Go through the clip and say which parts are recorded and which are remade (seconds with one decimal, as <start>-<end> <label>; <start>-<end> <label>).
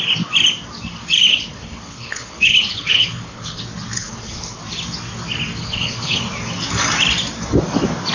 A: 0.0-1.3 recorded; 1.3-3.6 remade; 3.6-4.0 recorded; 4.0-4.6 remade; 4.6-5.6 recorded; 5.6-6.2 remade; 6.2-8.1 recorded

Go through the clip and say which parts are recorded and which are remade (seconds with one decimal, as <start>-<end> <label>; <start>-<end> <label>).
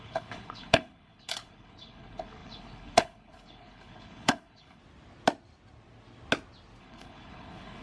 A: 0.0-4.8 remade; 4.8-6.8 recorded; 6.8-7.8 remade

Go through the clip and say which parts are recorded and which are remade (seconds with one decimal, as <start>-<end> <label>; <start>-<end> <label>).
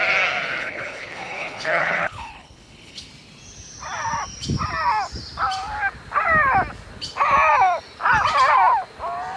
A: 0.0-0.6 recorded; 0.6-3.1 remade; 3.1-9.4 recorded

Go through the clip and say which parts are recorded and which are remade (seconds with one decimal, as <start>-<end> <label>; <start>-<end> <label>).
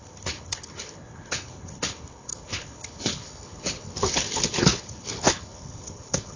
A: 0.0-6.4 remade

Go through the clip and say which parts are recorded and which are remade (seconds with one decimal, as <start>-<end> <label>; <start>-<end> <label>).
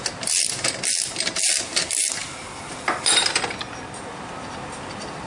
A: 0.0-5.3 recorded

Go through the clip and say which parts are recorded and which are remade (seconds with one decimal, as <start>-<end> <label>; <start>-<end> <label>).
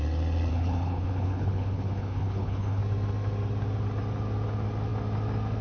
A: 0.0-0.5 recorded; 0.5-2.8 remade; 2.8-5.6 recorded